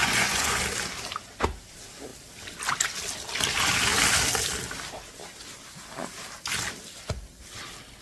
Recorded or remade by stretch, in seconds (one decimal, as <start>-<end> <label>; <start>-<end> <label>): 0.0-0.6 remade; 0.6-8.0 recorded